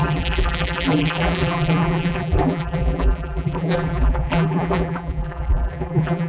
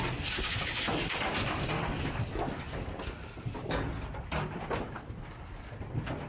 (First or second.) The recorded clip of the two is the second